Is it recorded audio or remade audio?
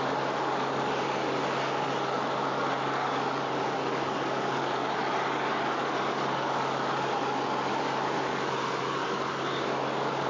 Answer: remade